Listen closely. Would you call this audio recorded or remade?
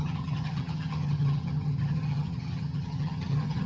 remade